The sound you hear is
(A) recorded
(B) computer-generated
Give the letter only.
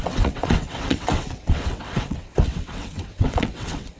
B